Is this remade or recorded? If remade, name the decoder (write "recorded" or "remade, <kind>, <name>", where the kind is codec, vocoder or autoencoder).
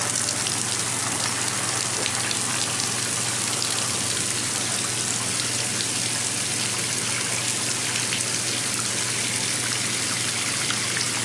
recorded